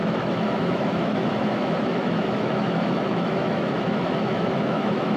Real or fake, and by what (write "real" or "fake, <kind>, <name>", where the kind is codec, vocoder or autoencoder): fake, autoencoder, DAC-VAE